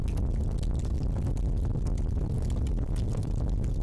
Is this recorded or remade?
recorded